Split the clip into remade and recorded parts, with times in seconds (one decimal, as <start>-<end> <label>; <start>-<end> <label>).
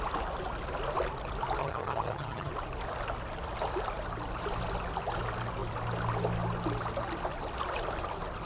0.0-1.6 recorded; 1.6-2.5 remade; 2.5-8.4 recorded